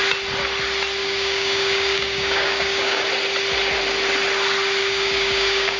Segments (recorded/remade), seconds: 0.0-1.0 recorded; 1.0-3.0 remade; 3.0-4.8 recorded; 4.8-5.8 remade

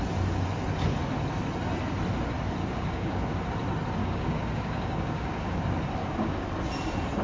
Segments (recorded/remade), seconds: 0.0-2.6 recorded; 2.6-3.5 remade; 3.5-4.0 recorded; 4.0-5.6 remade; 5.6-6.0 recorded; 6.0-6.5 remade; 6.5-7.2 recorded

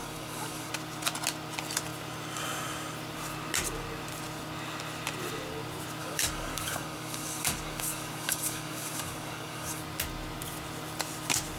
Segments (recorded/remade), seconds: 0.0-0.7 remade; 0.7-6.0 recorded; 6.0-9.8 remade; 9.8-11.6 recorded

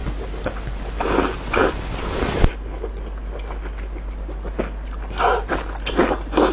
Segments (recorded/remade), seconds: 0.0-6.5 recorded

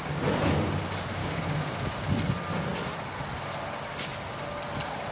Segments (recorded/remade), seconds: 0.0-1.2 recorded; 1.2-2.1 remade; 2.1-5.1 recorded

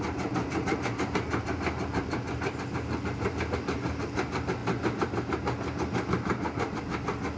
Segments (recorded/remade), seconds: 0.0-7.4 recorded